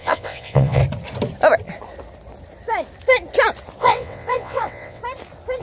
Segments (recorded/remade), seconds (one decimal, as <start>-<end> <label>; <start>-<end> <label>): 0.0-0.8 remade; 0.8-3.8 recorded; 3.8-5.0 remade; 5.0-5.6 recorded